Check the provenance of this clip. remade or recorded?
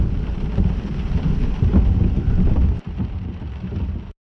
recorded